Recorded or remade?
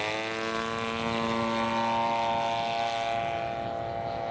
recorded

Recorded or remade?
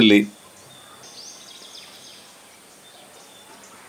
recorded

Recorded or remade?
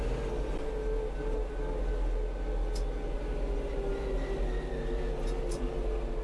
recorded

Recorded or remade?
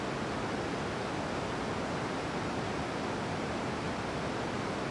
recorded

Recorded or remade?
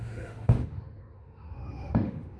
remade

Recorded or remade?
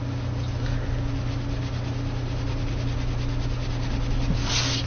recorded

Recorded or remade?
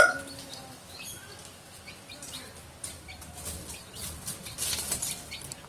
recorded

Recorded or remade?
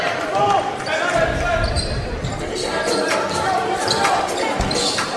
recorded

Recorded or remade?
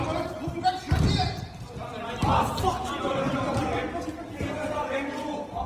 recorded